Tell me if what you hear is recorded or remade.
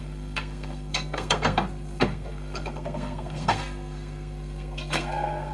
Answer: remade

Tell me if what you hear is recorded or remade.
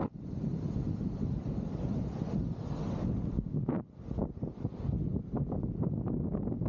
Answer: recorded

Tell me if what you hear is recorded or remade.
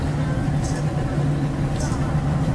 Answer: recorded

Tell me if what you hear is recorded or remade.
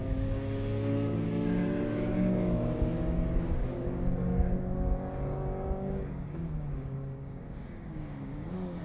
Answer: remade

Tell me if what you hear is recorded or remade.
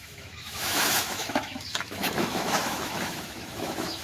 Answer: remade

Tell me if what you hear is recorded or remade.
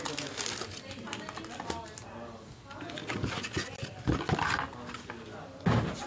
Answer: recorded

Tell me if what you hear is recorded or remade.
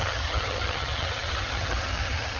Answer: remade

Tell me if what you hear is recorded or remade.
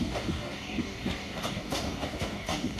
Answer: remade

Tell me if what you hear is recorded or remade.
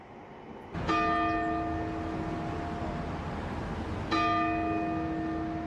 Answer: recorded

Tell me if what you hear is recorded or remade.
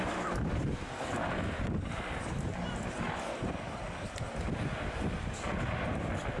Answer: recorded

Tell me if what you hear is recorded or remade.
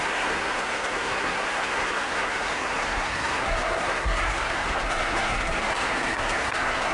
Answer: remade